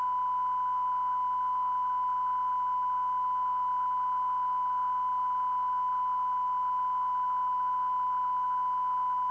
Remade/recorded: recorded